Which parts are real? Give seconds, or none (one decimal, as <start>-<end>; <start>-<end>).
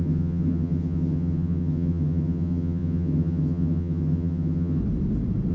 4.8-5.5